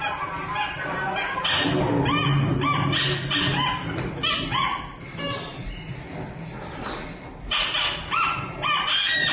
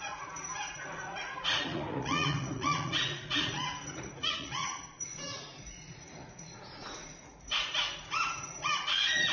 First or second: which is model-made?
second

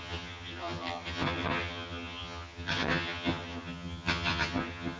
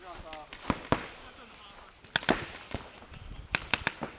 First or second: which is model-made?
first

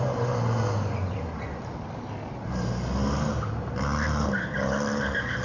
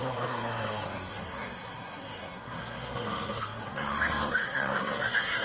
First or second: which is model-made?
second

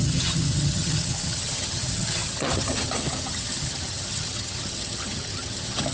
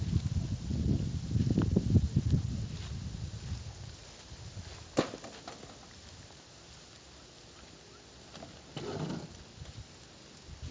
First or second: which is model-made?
first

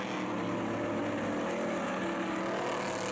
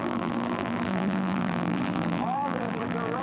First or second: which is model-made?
second